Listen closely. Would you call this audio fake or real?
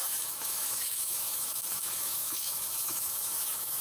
fake